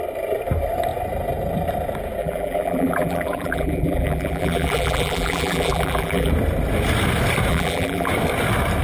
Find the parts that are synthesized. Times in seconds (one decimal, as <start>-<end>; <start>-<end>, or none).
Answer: 2.2-6.3; 7.5-8.1